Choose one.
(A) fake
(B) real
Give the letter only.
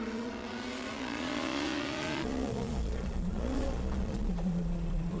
A